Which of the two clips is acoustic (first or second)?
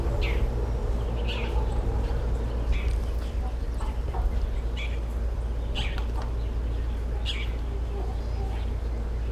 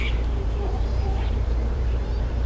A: first